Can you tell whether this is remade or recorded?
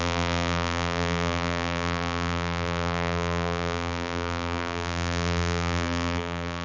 remade